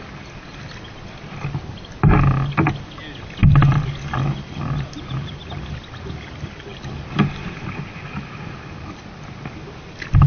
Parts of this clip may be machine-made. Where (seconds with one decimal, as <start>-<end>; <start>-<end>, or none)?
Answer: none